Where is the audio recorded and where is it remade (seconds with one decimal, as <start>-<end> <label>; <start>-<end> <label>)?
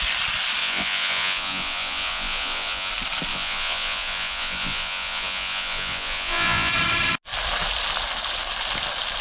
0.0-0.6 recorded; 0.6-2.9 remade; 2.9-3.3 recorded; 3.3-6.7 remade; 6.7-9.2 recorded